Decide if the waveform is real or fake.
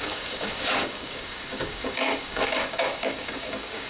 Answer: fake